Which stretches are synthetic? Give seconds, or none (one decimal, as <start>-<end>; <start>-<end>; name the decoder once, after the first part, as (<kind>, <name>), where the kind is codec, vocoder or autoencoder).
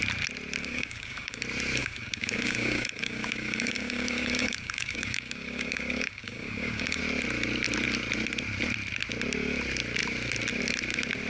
0.6-1.4 (codec, DAC); 1.8-7.0